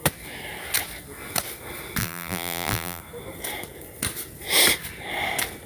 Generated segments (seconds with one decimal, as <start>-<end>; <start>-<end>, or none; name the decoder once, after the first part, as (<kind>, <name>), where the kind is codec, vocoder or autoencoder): 2.0-3.0 (vocoder, BigVGAN v2)